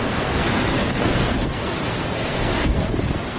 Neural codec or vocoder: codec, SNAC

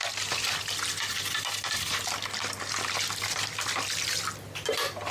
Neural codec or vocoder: none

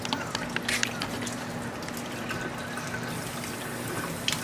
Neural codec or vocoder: none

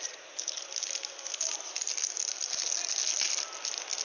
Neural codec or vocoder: none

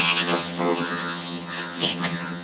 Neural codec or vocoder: vocoder, HiFi-GAN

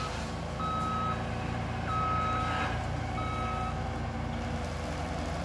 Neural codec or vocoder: none